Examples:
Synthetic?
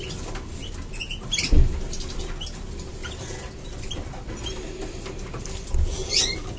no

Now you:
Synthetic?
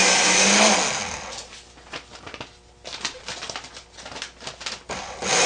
no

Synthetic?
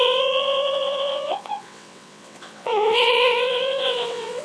yes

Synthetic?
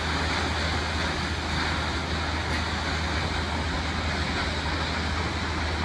no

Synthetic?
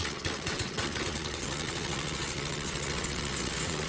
yes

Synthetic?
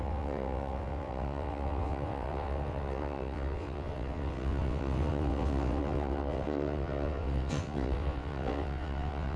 yes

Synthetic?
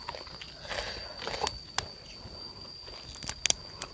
no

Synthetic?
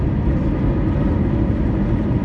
no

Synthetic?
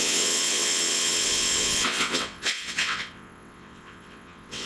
yes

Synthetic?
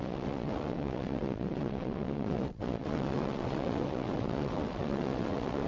yes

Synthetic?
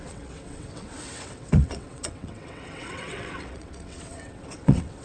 yes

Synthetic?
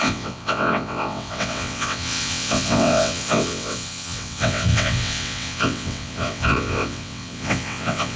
yes